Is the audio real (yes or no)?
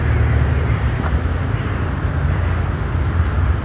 yes